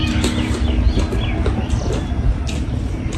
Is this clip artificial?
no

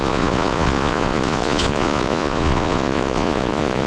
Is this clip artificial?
yes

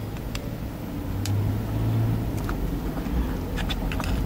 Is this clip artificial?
no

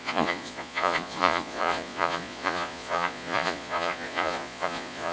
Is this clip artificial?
yes